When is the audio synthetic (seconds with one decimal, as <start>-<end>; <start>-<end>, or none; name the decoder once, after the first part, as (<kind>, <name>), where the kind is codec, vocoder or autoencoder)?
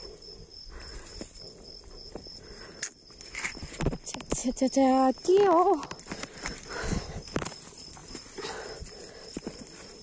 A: none